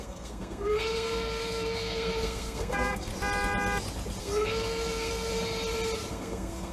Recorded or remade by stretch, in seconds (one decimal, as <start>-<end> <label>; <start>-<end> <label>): 0.0-3.1 remade; 3.1-4.2 recorded; 4.2-5.3 remade; 5.3-6.1 recorded; 6.1-6.7 remade